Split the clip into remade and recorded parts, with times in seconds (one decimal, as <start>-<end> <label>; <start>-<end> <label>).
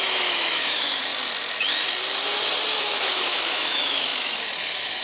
0.0-1.1 remade; 1.1-2.8 recorded; 2.8-5.0 remade